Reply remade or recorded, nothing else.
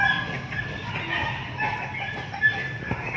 recorded